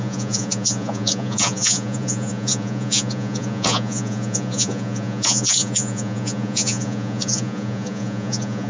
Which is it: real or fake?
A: fake